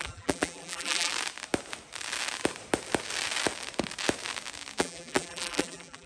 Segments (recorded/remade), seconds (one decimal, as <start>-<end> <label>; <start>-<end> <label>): 0.0-1.1 remade; 1.1-4.8 recorded; 4.8-6.1 remade

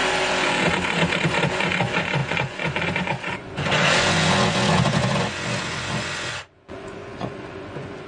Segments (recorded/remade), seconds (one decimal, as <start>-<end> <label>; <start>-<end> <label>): 0.0-8.1 remade

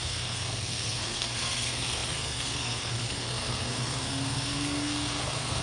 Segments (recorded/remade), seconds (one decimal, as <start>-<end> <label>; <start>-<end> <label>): 0.0-5.6 remade

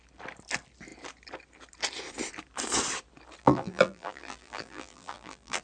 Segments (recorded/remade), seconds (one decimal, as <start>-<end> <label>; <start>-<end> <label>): 0.0-3.4 recorded; 3.4-5.6 remade